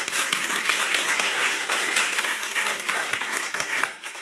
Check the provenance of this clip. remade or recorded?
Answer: remade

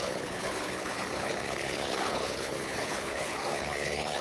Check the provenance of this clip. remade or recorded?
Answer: remade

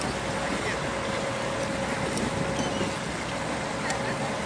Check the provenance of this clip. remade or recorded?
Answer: recorded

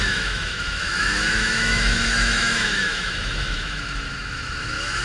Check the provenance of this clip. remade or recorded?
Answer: remade